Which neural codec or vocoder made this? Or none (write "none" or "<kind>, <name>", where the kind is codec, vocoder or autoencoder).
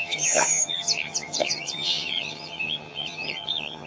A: vocoder, HiFi-GAN